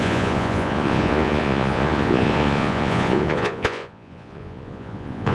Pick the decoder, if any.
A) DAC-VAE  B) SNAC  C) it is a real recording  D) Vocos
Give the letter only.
D